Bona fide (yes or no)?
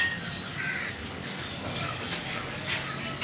no